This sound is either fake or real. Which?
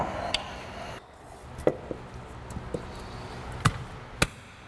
real